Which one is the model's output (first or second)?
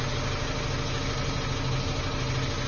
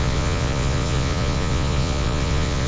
second